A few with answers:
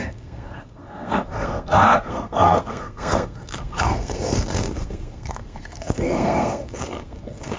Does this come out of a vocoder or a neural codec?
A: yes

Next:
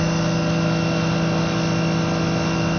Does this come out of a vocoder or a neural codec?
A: no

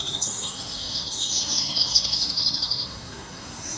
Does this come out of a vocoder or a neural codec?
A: yes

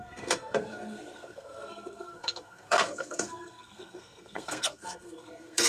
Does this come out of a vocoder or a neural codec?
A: yes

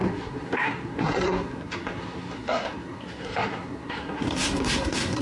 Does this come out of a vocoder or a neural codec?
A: yes